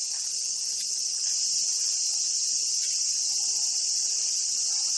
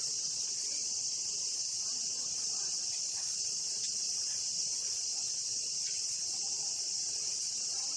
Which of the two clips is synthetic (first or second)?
second